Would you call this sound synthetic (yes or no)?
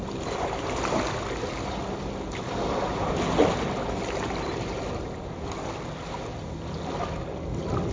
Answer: no